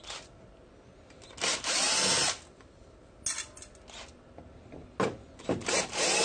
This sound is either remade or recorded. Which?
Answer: recorded